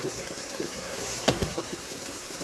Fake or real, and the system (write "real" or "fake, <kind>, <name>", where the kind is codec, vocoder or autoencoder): fake, codec, SNAC